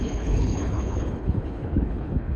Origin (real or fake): fake